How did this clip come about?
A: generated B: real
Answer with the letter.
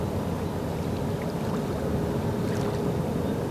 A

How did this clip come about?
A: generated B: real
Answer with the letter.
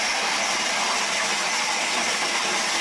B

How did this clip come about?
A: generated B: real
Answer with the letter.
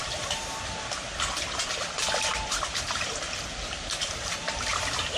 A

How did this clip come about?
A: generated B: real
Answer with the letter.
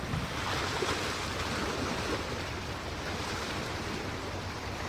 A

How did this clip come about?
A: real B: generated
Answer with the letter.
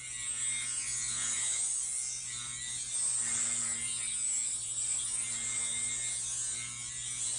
A